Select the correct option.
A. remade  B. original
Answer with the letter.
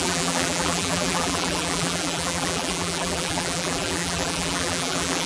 A